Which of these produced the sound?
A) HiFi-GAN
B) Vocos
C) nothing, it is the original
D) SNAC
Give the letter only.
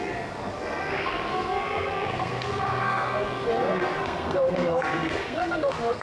D